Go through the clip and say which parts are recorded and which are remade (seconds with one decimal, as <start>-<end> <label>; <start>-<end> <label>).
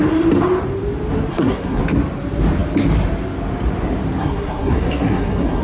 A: 0.0-1.3 recorded; 1.3-1.8 remade; 1.8-4.2 recorded; 4.2-5.6 remade